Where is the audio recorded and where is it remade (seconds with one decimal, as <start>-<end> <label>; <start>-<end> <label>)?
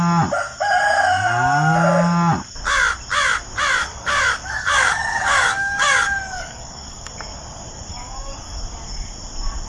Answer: 0.0-3.8 recorded; 3.8-7.1 remade; 7.1-7.9 recorded; 7.9-8.6 remade; 8.6-9.7 recorded